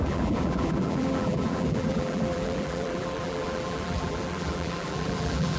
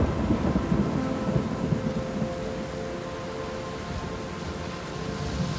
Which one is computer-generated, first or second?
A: first